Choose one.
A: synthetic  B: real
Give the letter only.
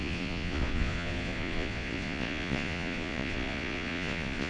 A